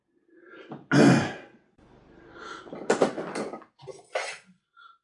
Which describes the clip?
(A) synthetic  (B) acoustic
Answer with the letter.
B